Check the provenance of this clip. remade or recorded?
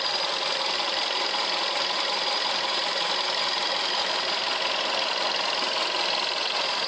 recorded